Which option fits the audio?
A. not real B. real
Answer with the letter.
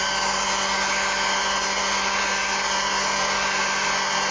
B